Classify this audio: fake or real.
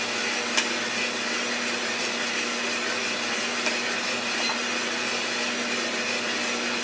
real